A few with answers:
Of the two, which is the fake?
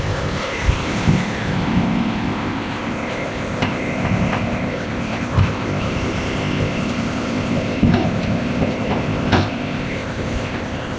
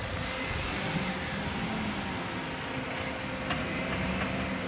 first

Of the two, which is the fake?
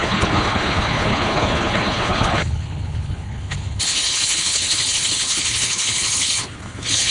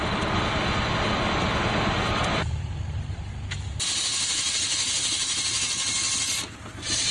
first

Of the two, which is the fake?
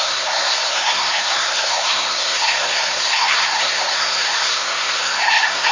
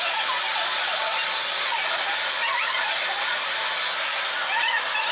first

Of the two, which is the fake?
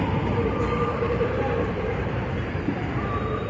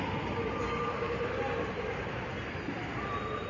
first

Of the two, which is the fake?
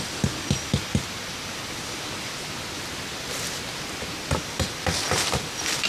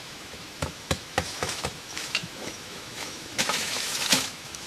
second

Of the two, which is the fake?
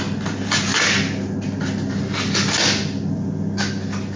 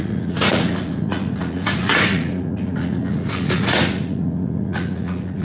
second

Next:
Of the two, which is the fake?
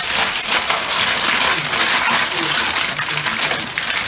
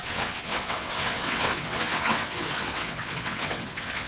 second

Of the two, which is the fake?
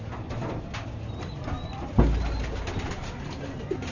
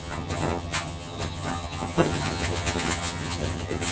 second